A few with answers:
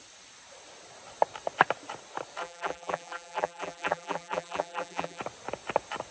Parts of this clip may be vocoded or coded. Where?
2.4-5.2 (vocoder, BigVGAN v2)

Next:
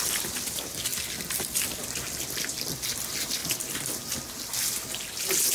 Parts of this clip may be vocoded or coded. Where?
none

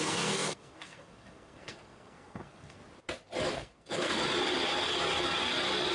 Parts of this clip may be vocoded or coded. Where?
0.0-2.8 (codec, SNAC); 3.5-4.2